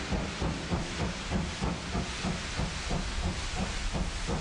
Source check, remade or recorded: recorded